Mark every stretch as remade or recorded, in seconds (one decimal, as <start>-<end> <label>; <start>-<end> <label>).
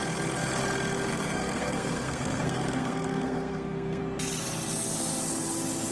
0.0-1.1 recorded; 1.1-4.0 remade; 4.0-5.9 recorded